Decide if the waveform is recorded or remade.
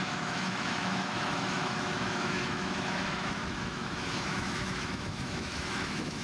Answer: remade